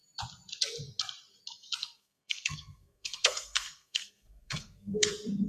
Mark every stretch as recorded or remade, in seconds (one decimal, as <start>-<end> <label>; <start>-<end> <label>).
0.0-1.8 recorded; 1.8-5.1 remade; 5.1-5.5 recorded